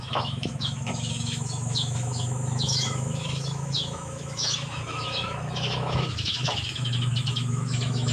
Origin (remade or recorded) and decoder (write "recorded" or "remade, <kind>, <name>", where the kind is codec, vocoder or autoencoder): remade, autoencoder, DAC-VAE